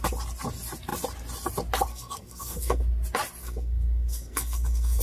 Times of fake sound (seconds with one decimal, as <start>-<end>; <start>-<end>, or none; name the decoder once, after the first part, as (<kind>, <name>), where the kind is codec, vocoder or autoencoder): 1.9-2.8 (codec, SNAC); 3.4-5.0